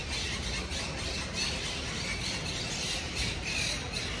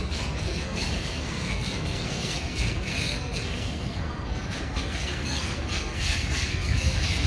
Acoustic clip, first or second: first